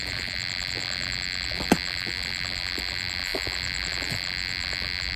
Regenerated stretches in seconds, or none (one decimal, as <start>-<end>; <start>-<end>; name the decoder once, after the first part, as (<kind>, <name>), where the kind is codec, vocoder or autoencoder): none